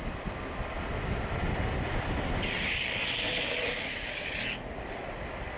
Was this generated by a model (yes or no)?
no